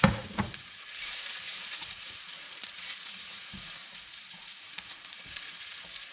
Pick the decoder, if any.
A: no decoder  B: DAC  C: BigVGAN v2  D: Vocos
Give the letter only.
D